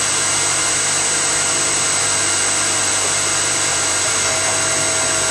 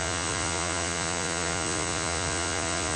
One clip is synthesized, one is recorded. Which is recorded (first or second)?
first